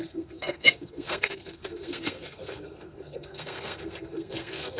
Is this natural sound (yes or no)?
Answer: no